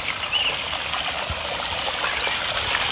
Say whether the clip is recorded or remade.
recorded